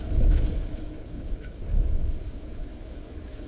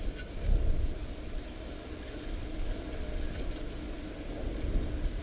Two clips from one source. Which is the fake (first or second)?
first